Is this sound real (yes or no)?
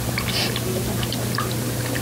yes